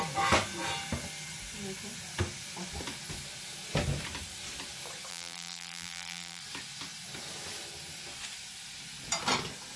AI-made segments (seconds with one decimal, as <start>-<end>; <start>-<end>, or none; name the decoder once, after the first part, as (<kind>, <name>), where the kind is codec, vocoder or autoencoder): 5.1-6.4 (vocoder, BigVGAN v2)